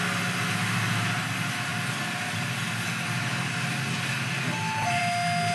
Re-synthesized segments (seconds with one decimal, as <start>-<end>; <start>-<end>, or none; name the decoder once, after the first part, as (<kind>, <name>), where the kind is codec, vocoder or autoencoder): none